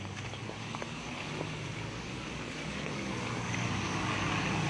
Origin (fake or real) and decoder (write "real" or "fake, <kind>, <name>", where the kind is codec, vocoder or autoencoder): fake, codec, DAC